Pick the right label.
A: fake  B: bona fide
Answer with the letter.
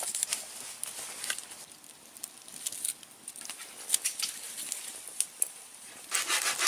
B